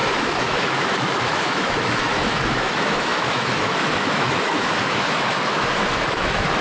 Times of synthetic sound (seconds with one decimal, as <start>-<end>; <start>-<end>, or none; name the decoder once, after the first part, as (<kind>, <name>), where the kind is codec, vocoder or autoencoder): 0.0-6.6 (autoencoder, DAC-VAE)